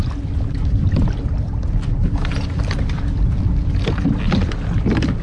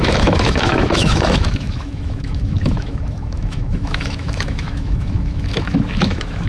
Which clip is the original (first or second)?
first